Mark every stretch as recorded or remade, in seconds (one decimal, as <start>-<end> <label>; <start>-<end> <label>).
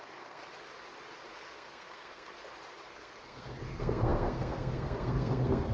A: 0.0-0.4 remade; 0.4-1.3 recorded; 1.3-2.4 remade; 2.4-2.9 recorded; 2.9-5.7 remade